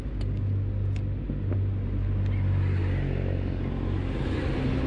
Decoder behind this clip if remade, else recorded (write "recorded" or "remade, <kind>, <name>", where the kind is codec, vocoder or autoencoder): recorded